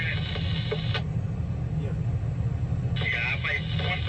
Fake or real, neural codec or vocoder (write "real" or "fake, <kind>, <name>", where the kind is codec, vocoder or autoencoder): real